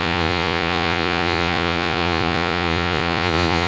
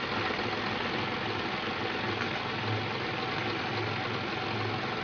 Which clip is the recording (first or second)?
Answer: second